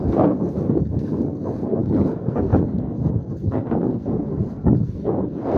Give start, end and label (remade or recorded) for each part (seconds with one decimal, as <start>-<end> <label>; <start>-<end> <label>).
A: 0.0-5.6 remade